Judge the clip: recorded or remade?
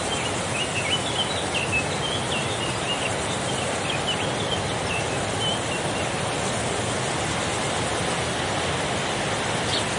recorded